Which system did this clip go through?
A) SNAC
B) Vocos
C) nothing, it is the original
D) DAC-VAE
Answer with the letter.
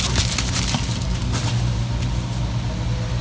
C